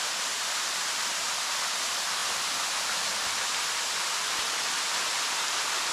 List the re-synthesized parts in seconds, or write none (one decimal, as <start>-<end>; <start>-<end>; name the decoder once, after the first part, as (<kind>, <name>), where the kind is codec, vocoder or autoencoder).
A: 2.2-5.9 (vocoder, BigVGAN v2)